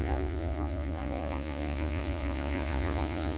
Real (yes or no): no